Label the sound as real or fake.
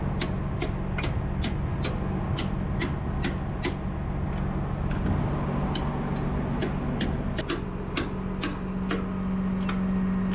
real